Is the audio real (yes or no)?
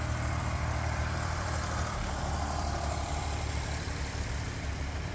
no